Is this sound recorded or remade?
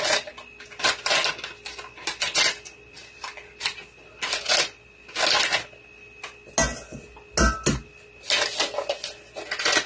recorded